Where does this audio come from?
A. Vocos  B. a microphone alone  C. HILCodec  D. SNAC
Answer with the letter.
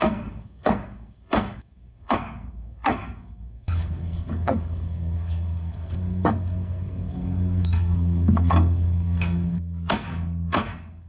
D